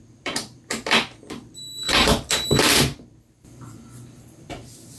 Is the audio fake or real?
fake